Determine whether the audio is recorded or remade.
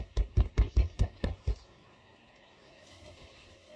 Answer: remade